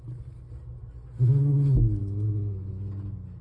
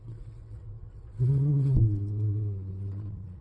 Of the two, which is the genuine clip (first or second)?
first